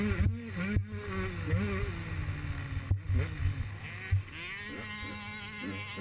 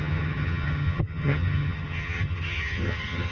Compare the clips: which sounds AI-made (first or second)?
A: second